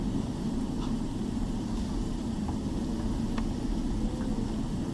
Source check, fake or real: real